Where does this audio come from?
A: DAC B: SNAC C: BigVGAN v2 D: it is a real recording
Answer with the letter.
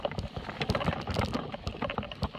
D